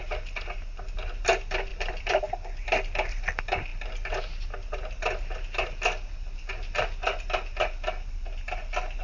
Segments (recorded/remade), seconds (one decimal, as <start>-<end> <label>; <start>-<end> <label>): 0.0-1.7 recorded; 1.7-2.2 remade; 2.2-9.0 recorded